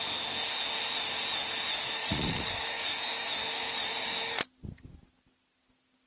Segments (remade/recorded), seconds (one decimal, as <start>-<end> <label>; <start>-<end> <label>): 0.0-2.0 recorded; 2.0-2.5 remade; 2.5-6.1 recorded